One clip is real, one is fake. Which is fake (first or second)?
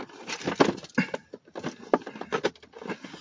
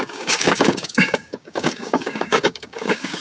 second